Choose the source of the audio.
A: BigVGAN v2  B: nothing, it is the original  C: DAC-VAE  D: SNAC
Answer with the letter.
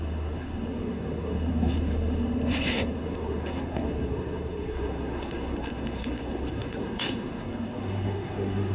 D